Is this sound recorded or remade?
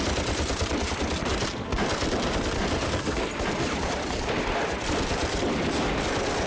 remade